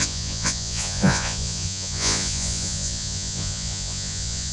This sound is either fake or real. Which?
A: fake